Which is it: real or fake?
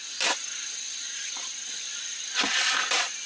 real